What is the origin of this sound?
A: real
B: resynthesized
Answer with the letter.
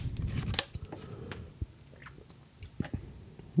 A